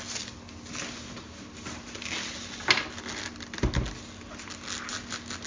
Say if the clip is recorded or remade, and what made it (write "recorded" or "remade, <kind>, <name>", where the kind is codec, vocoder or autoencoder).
recorded